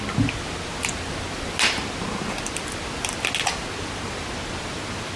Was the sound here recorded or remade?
recorded